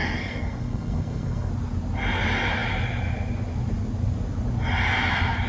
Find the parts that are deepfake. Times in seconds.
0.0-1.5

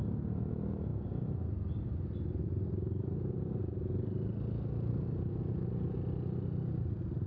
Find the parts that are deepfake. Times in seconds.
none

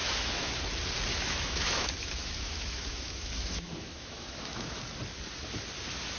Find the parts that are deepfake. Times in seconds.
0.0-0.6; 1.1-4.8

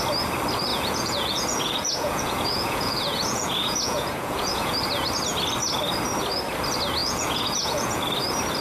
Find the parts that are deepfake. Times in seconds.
0.7-4.8; 7.0-8.0

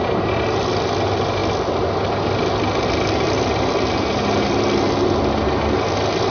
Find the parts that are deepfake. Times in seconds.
none

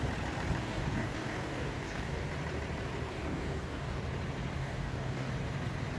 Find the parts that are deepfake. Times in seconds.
0.6-2.3; 3.1-4.0; 4.6-5.3

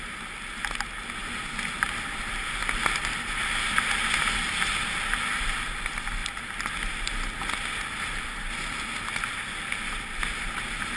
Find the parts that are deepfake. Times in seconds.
none